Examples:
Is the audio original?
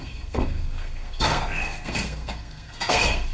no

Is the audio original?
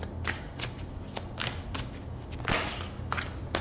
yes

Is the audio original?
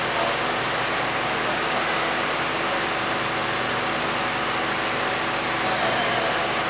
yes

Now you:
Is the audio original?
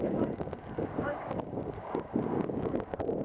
no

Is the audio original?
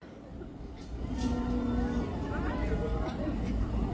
yes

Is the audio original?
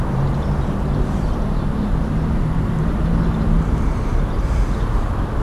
no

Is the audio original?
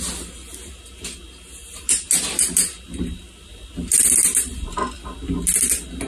yes